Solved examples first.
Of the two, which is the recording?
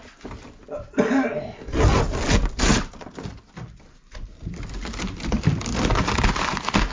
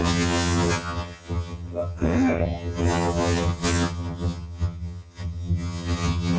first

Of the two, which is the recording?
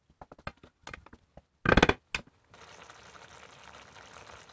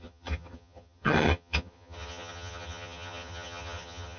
first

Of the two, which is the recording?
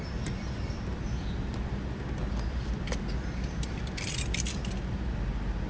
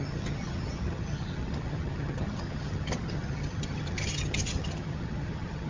first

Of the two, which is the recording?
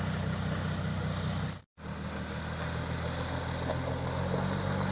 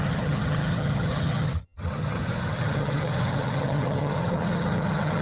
first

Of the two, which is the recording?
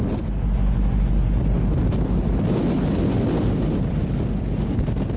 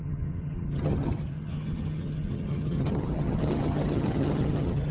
first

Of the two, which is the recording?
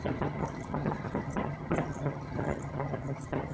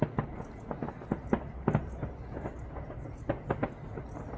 second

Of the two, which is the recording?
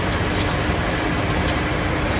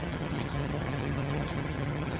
first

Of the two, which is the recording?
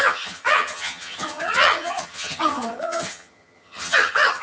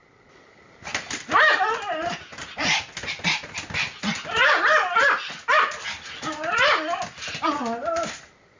second